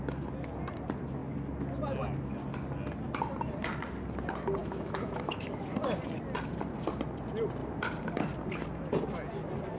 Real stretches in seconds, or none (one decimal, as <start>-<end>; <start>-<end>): 0.0-4.6; 5.6-9.8